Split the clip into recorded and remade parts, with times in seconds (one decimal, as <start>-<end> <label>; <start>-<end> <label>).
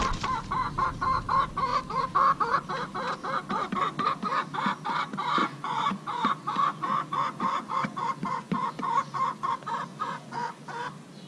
0.0-5.4 recorded; 5.4-9.5 remade; 9.5-9.9 recorded; 9.9-10.6 remade; 10.6-11.3 recorded